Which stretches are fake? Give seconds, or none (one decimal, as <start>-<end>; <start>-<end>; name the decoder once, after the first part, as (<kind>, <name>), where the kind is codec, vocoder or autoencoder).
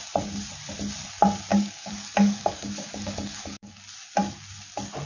1.5-3.7 (codec, DAC)